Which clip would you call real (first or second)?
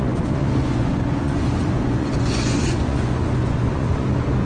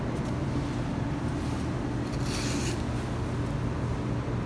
second